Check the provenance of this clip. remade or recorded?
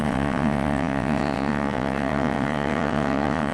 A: remade